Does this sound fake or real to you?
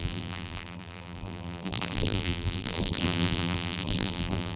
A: fake